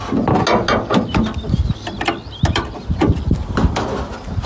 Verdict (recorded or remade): recorded